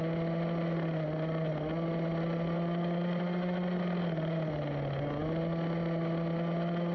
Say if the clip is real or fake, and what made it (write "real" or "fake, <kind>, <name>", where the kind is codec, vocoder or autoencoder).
real